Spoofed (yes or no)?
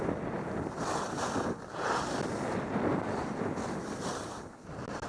no